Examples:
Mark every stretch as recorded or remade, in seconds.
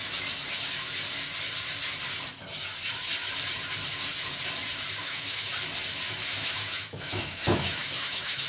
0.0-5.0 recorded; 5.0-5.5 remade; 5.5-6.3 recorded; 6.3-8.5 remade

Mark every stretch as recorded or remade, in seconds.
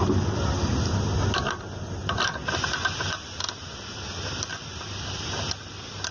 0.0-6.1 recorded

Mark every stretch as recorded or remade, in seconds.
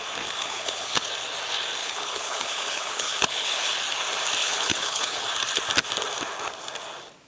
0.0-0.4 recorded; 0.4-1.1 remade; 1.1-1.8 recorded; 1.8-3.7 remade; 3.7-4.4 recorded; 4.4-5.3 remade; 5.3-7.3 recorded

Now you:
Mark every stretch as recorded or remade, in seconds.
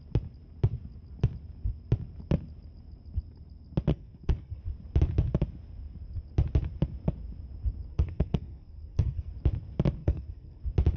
0.0-3.9 recorded; 3.9-4.6 remade; 4.6-7.9 recorded; 7.9-9.3 remade; 9.3-10.0 recorded; 10.0-10.6 remade; 10.6-11.0 recorded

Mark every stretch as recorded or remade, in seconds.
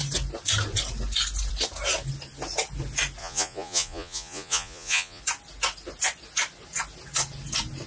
0.0-3.2 recorded; 3.2-5.2 remade; 5.2-7.9 recorded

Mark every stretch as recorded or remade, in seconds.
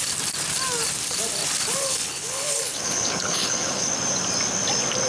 0.0-1.8 recorded; 1.8-3.9 remade; 3.9-5.1 recorded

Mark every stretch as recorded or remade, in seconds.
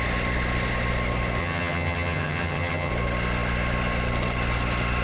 0.0-1.4 recorded; 1.4-2.9 remade; 2.9-5.0 recorded